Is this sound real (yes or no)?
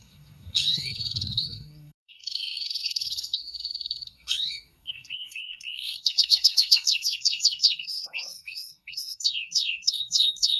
no